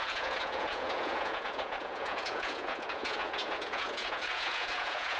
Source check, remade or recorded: remade